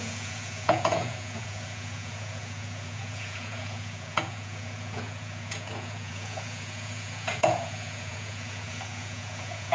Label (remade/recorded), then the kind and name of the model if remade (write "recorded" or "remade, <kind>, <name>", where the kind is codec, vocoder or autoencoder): remade, vocoder, Vocos